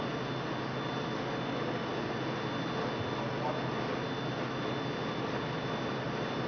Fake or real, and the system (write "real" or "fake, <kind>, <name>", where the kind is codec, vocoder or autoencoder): real